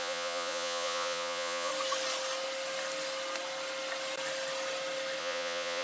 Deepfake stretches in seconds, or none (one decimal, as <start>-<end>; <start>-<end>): 0.0-1.7; 5.2-5.8